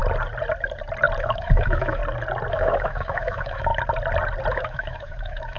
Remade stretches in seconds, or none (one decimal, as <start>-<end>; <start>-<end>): 1.2-2.0; 2.5-3.7; 4.5-5.6

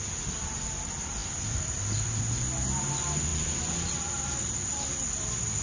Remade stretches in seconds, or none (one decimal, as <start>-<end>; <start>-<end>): 1.2-2.2

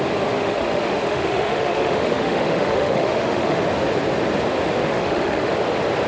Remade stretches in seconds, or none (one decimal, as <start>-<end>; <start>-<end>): 0.4-3.6; 4.8-5.5

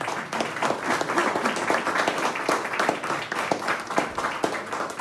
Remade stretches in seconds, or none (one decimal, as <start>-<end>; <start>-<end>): none

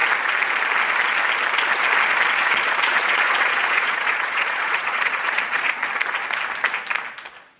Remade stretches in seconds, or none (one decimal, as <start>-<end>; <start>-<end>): 2.4-5.9

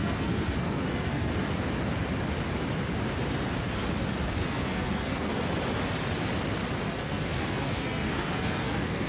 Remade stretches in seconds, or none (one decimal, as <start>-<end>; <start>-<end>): 0.0-1.3; 4.3-5.3; 6.9-9.1

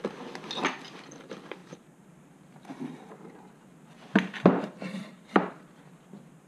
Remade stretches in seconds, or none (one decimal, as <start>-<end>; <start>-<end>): 1.6-3.5; 5.0-5.6